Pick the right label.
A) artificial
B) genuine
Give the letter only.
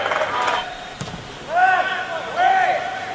B